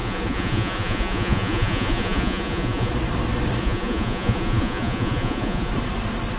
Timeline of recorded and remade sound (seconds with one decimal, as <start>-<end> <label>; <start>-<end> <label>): 0.0-2.9 remade; 2.9-3.6 recorded; 3.6-5.7 remade; 5.7-6.4 recorded